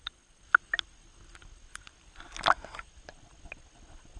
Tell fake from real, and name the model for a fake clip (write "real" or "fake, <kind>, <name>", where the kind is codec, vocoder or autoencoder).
real